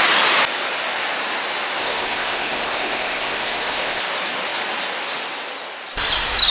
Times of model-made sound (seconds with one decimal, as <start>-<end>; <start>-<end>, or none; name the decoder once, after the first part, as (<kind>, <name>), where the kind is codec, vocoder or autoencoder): 1.8-4.0 (codec, ZipCodec)